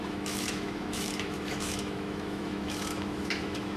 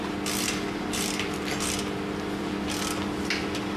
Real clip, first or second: second